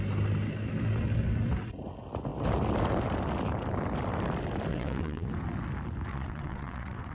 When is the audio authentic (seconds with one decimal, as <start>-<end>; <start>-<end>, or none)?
0.0-4.7; 5.3-6.1